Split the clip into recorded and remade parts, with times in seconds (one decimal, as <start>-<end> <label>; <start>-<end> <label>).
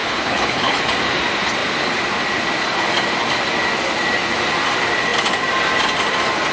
0.0-0.8 remade; 0.8-6.5 recorded